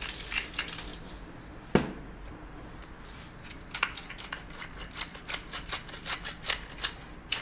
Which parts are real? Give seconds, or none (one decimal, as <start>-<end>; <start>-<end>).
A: 0.0-7.4